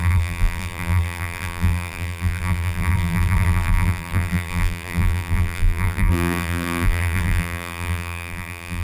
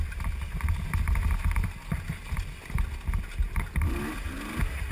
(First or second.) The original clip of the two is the second